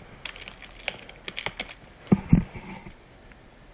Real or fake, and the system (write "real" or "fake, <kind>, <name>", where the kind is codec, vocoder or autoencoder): real